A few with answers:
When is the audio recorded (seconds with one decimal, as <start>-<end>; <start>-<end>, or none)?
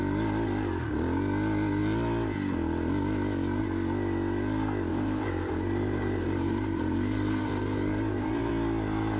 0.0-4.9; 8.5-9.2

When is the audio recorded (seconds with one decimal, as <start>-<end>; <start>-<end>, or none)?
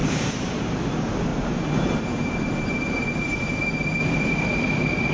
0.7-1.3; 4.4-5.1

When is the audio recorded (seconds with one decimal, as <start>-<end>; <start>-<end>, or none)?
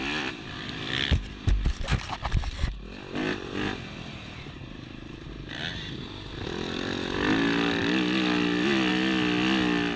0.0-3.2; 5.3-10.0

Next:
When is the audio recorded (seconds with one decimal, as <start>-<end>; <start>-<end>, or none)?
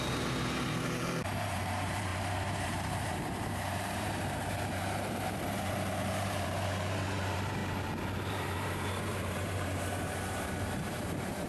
7.6-8.3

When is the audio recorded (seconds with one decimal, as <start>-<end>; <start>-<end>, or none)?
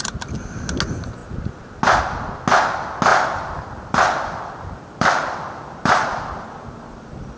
0.0-3.1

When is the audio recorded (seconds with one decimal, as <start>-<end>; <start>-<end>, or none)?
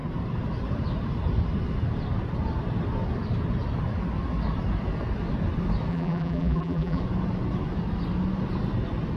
0.0-5.9; 7.0-9.2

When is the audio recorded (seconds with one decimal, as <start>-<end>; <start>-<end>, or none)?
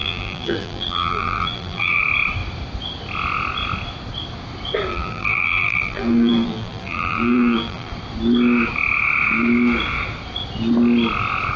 2.0-4.9; 7.9-11.6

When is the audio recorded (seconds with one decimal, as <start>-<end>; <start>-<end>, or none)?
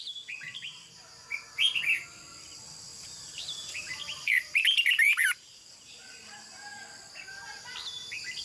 0.0-2.9; 6.8-8.4